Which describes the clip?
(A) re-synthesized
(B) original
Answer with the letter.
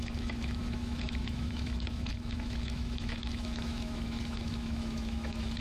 A